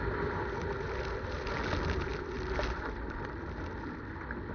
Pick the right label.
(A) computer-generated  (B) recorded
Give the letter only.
B